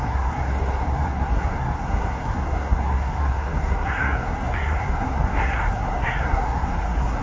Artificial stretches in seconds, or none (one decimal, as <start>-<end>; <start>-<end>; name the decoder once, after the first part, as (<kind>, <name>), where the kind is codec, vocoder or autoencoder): 0.0-7.2 (codec, SNAC)